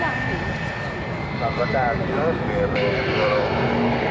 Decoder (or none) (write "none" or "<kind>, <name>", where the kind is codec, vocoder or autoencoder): none